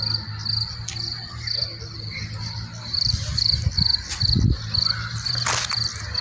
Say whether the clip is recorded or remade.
recorded